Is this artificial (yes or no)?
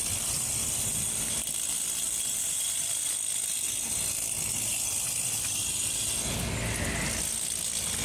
no